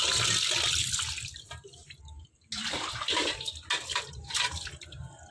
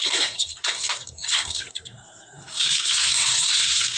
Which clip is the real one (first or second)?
first